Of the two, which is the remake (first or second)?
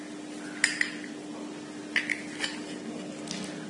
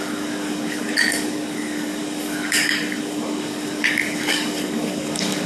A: second